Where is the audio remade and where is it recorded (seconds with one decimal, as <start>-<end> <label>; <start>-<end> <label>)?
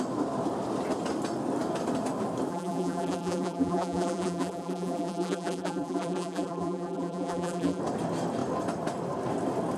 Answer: 0.0-2.5 recorded; 2.5-7.8 remade; 7.8-9.8 recorded